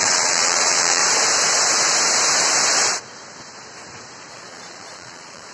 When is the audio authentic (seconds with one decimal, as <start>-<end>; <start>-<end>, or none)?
1.0-4.3